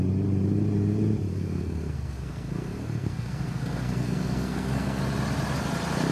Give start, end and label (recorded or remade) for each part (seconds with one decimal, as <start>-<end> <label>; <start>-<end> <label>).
0.0-1.3 recorded; 1.3-5.0 remade; 5.0-6.1 recorded